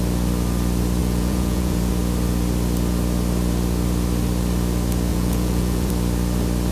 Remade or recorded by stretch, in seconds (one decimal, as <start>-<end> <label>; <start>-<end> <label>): 0.0-1.0 recorded; 1.0-1.9 remade; 1.9-5.1 recorded; 5.1-5.9 remade; 5.9-6.7 recorded